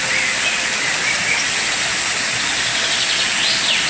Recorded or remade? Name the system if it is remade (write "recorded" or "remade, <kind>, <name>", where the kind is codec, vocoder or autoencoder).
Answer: recorded